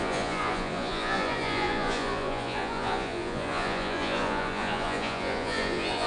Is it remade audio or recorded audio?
remade